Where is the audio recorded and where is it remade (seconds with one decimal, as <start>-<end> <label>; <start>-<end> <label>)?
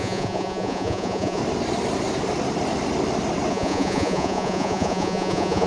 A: 0.0-1.4 remade; 1.4-3.5 recorded; 3.5-5.7 remade